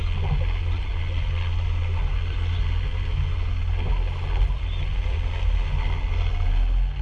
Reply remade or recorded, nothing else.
recorded